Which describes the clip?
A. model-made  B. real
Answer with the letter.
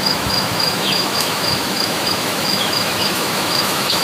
A